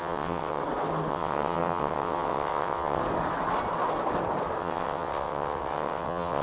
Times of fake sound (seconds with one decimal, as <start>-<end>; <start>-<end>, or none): 0.0-0.6; 1.1-3.0; 4.6-6.4

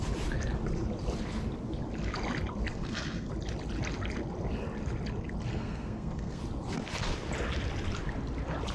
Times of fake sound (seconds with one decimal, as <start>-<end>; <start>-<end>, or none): 2.7-3.3; 5.5-6.4

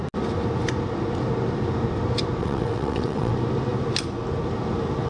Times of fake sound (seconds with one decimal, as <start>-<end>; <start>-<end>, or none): 2.4-3.3

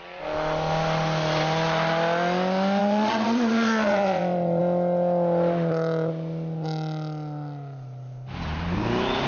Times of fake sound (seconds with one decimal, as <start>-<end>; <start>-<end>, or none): 2.8-4.6